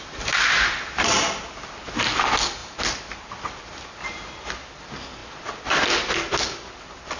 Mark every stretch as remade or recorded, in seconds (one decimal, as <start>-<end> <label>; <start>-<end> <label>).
0.0-7.2 recorded